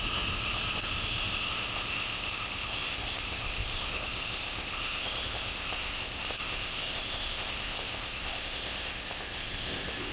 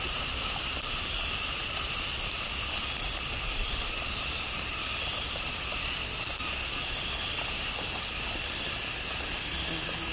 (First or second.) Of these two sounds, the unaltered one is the second